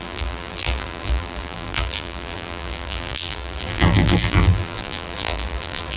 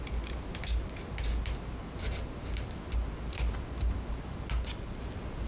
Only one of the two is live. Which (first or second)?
second